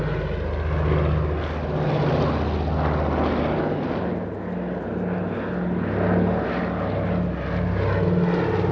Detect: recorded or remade recorded